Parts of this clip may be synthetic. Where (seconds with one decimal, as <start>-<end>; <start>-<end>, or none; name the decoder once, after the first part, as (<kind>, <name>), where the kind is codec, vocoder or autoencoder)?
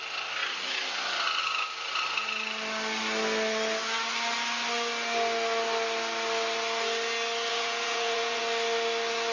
7.5-8.4 (vocoder, Vocos)